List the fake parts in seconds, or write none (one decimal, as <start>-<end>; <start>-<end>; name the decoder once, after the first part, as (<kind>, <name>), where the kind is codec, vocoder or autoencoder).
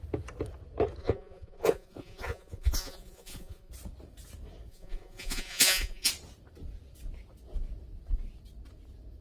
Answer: 1.0-3.7 (vocoder, Vocos); 4.7-6.1